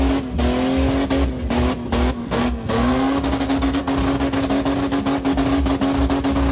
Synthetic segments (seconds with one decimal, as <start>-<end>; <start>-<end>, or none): 2.2-3.8